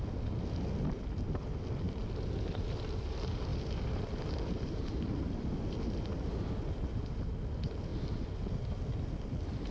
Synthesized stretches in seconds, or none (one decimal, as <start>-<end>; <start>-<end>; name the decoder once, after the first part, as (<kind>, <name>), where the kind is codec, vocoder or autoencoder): 3.5-5.5 (vocoder, BigVGAN v2)